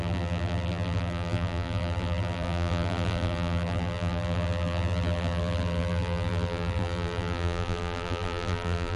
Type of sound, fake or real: fake